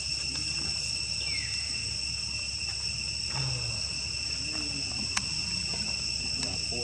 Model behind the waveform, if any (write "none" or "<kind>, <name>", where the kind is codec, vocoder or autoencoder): none